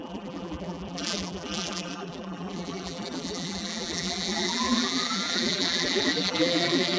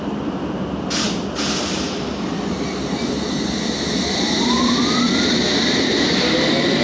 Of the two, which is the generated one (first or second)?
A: first